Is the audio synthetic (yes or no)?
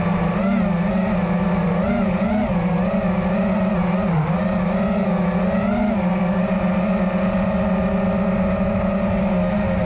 no